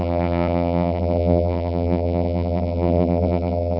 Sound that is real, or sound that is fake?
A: fake